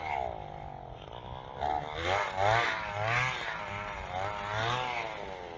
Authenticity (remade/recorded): recorded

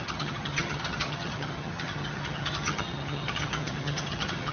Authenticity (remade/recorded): remade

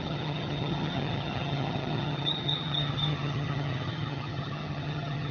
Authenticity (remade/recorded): remade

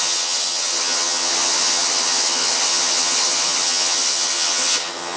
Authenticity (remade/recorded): remade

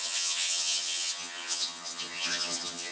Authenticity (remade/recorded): remade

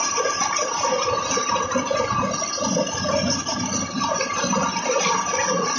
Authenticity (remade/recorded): recorded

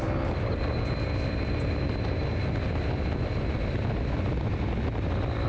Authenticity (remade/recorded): recorded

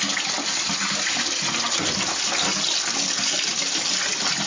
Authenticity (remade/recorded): recorded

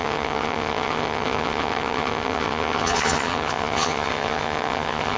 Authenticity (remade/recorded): remade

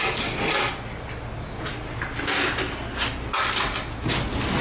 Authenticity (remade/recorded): recorded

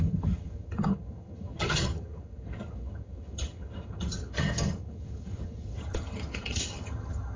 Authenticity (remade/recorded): remade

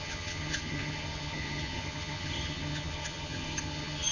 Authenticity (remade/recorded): remade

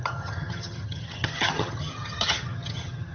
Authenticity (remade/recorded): remade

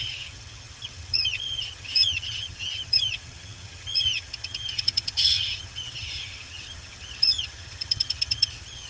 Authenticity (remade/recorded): remade